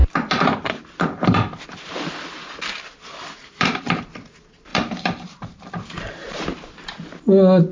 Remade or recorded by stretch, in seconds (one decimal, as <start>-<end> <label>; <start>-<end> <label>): 0.0-3.4 recorded; 3.4-4.0 remade; 4.0-4.7 recorded; 4.7-5.7 remade; 5.7-6.2 recorded; 6.2-6.9 remade; 6.9-7.7 recorded